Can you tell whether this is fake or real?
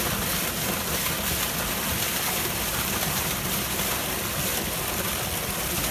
real